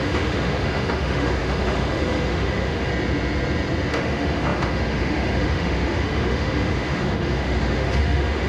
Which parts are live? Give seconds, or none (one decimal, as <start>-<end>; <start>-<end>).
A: 2.9-3.9